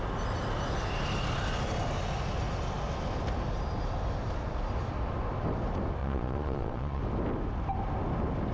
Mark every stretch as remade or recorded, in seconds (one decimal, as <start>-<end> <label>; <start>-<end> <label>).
0.0-6.0 recorded; 6.0-7.0 remade; 7.0-8.5 recorded